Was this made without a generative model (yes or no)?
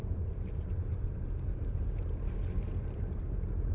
yes